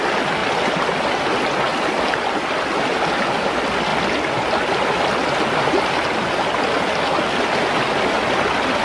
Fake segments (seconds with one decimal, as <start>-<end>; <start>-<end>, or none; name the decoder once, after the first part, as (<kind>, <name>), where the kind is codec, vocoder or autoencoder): 0.4-1.1 (vocoder, BigVGAN v2); 3.9-4.4